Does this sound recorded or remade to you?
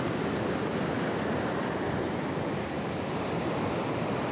remade